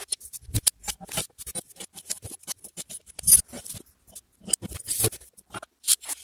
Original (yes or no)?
yes